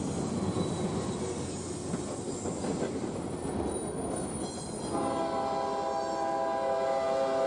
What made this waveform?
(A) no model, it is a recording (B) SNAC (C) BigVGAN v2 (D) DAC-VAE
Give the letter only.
A